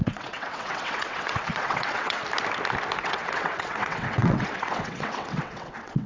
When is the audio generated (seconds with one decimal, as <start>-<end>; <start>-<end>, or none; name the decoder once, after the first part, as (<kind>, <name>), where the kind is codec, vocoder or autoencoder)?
0.0-2.2 (vocoder, WaveNeXt); 3.0-6.1